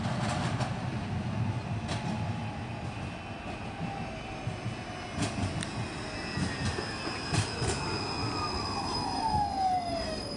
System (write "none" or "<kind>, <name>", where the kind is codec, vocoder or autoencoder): none